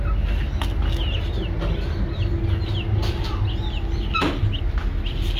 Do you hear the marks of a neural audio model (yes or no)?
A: no